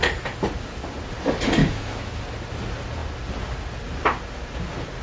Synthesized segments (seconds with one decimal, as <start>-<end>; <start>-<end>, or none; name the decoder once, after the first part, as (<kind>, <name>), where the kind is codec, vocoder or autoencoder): 1.6-2.2 (autoencoder, DAC-VAE)

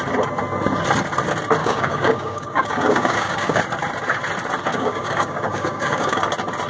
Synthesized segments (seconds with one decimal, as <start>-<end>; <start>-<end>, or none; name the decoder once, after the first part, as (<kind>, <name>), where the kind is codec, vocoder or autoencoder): 1.6-3.6 (codec, DAC); 4.7-6.2

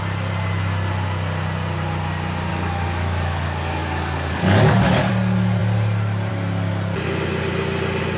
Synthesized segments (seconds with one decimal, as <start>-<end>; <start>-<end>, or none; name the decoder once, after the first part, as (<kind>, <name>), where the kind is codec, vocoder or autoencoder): 2.5-5.1 (codec, DAC)

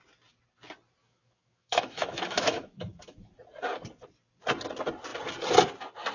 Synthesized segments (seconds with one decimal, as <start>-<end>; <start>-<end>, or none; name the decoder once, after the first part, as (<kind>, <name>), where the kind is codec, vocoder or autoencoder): 1.0-3.3 (autoencoder, DAC-VAE)

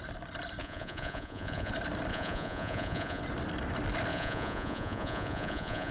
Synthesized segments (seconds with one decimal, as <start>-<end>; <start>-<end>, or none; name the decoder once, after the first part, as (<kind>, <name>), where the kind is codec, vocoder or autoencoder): 0.6-1.7 (vocoder, Vocos); 2.1-3.2; 4.1-5.9